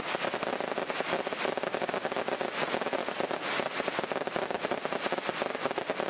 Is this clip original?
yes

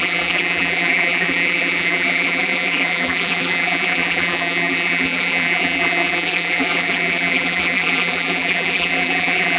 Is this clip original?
no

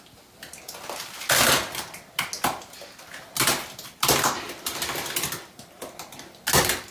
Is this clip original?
yes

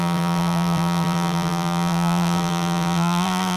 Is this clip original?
no